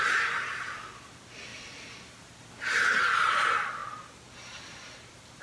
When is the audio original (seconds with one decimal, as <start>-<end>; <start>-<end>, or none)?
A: 0.0-5.4